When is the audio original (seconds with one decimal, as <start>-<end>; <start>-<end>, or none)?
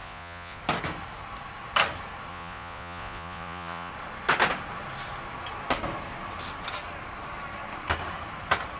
0.6-2.3; 3.9-8.8